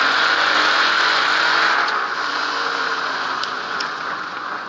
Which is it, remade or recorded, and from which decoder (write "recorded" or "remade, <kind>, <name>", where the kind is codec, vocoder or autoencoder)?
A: remade, vocoder, Vocos